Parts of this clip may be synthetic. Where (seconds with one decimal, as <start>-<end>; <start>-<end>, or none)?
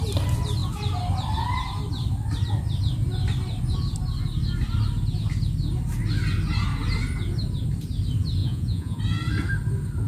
8.4-9.0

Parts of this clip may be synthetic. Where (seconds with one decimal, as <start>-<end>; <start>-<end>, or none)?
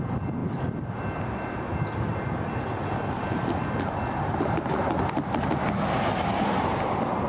none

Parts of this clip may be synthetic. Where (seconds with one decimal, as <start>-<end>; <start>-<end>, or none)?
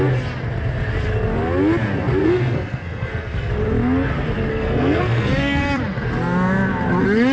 2.2-3.5; 4.5-5.6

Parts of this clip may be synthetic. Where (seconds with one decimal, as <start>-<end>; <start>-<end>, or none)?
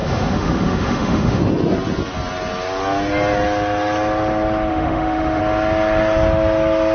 0.0-1.4; 4.7-5.4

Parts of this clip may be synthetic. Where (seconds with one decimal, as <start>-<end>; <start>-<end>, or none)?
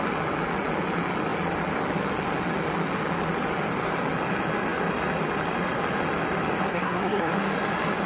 6.7-7.3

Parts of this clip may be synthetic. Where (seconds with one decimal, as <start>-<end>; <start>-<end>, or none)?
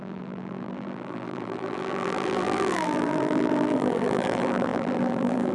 0.0-5.5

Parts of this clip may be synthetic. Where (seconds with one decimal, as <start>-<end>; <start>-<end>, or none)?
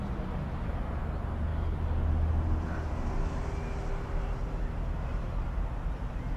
none